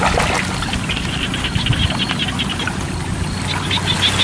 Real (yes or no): yes